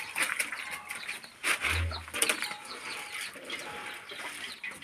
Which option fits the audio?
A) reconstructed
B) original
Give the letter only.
B